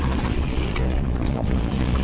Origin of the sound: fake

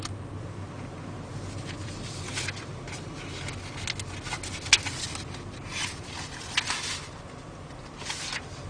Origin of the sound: real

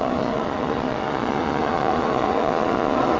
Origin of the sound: fake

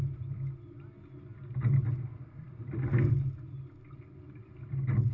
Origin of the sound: real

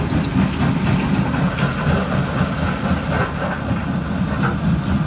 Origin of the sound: real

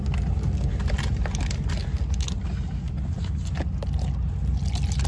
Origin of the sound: real